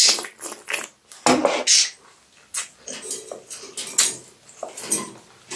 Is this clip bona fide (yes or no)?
yes